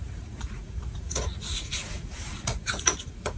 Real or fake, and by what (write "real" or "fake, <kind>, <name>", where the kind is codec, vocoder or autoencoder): fake, vocoder, Vocos